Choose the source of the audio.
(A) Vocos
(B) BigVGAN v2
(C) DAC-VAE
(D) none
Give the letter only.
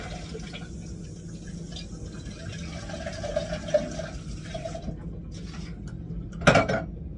D